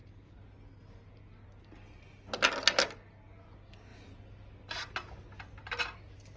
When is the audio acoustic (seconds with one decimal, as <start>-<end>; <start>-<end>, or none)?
0.0-6.4